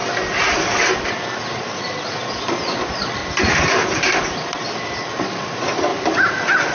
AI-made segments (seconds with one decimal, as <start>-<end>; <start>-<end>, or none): 1.5-3.2; 5.2-5.9